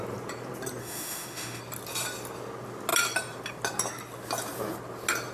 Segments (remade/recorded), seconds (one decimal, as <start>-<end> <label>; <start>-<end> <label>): 0.0-0.8 recorded; 0.8-1.6 remade; 1.6-5.3 recorded